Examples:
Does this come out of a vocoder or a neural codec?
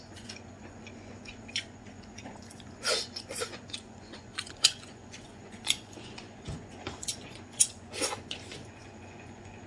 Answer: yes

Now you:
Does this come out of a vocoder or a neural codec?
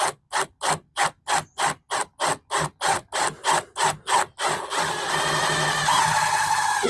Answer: no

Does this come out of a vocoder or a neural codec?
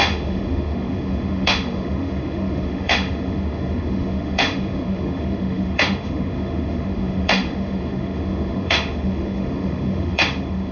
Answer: yes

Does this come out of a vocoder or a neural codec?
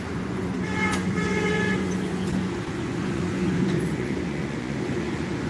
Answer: yes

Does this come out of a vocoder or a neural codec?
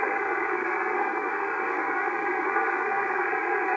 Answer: yes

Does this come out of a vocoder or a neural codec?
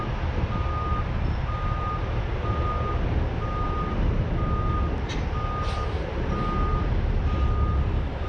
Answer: no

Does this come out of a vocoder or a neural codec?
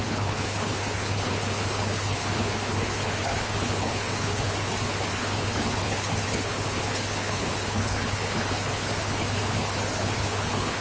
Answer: yes